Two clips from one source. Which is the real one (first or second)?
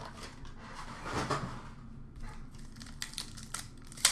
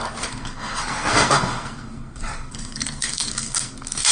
first